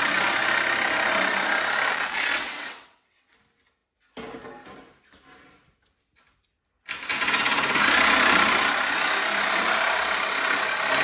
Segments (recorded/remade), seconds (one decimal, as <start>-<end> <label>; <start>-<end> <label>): 0.0-1.9 recorded; 1.9-3.4 remade; 3.4-11.0 recorded